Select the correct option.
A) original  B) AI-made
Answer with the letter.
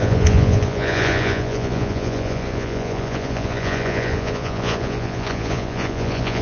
B